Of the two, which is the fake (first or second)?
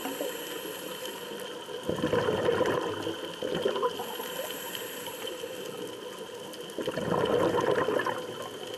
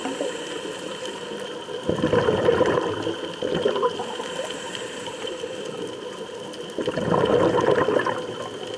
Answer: second